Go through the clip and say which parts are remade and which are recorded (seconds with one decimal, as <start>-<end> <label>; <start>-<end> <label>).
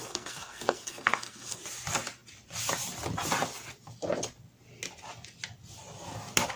0.0-1.6 remade; 1.6-6.6 recorded